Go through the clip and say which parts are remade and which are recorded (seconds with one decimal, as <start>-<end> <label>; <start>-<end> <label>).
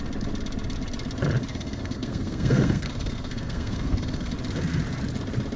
0.0-1.5 recorded; 1.5-4.3 remade; 4.3-5.6 recorded